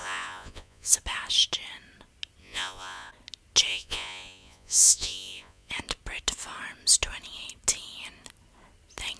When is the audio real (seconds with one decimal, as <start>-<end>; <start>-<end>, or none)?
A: 0.9-2.4; 3.1-3.7; 5.7-9.2